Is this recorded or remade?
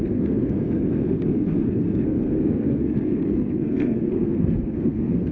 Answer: remade